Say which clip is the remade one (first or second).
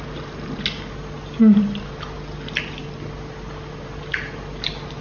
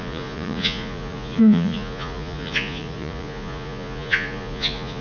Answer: second